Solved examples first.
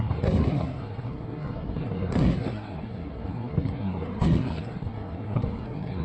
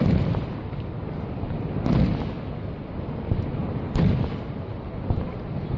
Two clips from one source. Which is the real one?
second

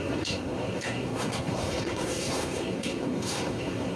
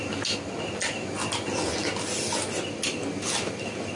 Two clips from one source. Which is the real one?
second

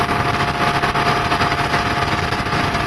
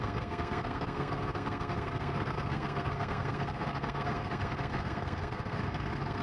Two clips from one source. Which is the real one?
first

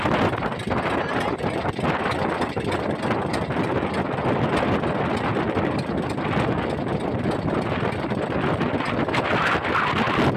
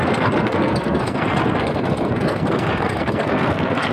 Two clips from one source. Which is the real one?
first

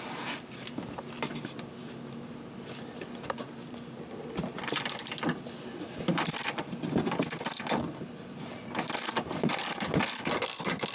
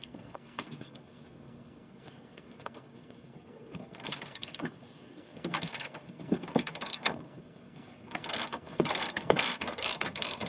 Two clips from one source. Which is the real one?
first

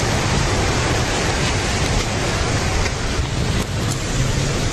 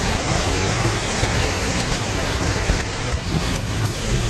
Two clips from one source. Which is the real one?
first